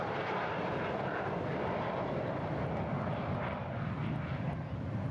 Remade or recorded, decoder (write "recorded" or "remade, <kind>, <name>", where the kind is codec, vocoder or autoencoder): recorded